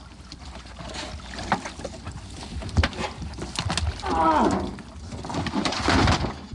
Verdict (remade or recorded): recorded